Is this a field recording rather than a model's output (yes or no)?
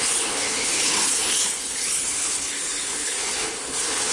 no